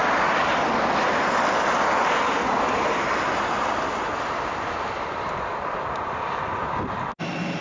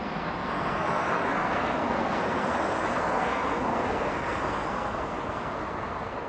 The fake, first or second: second